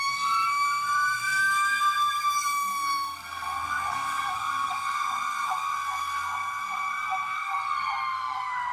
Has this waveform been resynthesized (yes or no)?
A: yes